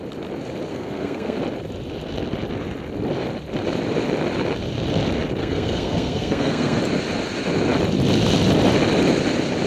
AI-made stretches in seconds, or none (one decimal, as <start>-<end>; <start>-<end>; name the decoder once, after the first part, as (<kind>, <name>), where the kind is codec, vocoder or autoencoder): 0.7-1.4 (codec, SNAC); 5.4-6.8